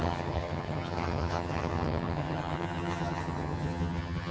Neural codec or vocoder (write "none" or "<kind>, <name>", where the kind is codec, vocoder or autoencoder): vocoder, HiFi-GAN